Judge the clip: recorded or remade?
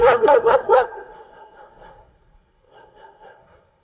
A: remade